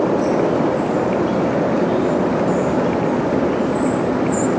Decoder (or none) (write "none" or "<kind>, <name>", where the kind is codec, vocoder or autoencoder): none